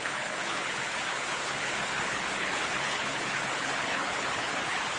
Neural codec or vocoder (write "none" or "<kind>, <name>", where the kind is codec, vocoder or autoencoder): codec, HILCodec